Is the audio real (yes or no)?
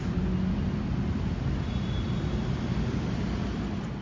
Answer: yes